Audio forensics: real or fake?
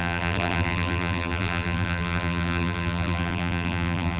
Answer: fake